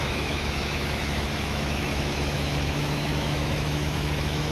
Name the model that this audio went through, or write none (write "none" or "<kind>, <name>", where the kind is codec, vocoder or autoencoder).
autoencoder, DAC-VAE